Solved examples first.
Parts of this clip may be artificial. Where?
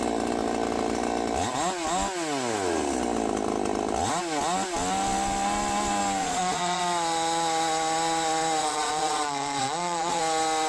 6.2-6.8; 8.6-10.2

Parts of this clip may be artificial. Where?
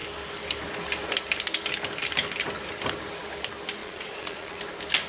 3.8-4.6